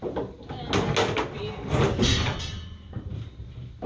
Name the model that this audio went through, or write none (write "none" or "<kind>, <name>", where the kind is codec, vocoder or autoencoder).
none